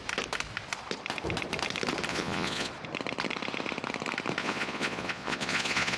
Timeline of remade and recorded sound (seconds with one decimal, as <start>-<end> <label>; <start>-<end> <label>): 0.0-2.1 recorded; 2.1-2.7 remade; 2.7-4.4 recorded; 4.4-6.0 remade